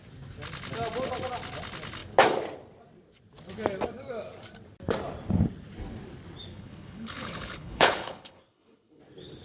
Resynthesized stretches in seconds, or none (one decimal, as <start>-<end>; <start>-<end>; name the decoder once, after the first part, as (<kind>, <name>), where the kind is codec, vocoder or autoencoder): 6.5-9.0 (codec, HILCodec)